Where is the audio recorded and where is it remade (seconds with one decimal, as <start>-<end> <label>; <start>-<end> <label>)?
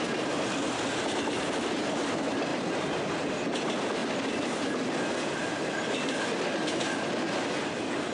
0.0-2.5 recorded; 2.5-3.1 remade; 3.1-8.1 recorded